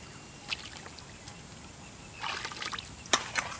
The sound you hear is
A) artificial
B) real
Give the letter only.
B